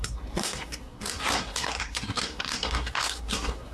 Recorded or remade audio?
remade